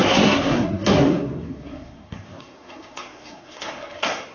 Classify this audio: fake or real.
fake